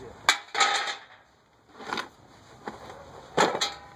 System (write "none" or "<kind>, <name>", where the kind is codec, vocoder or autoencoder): none